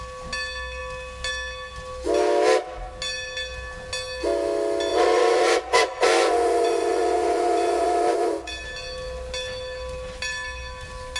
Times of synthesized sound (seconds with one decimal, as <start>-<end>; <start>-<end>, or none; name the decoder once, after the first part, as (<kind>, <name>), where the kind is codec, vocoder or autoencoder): 4.9-8.5 (vocoder, Vocos)